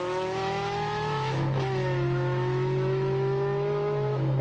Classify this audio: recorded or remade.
remade